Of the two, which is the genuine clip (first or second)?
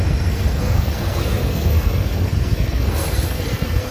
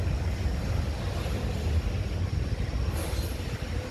second